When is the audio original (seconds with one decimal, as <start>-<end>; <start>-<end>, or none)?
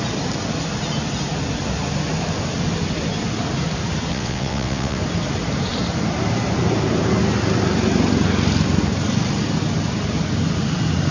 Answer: 0.0-4.1; 5.0-11.1